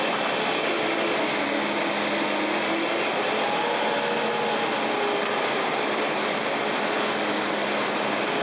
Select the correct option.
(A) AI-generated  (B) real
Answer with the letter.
B